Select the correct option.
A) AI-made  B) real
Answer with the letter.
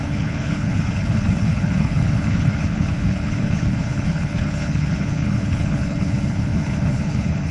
A